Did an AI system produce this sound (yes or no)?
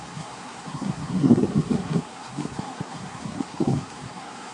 yes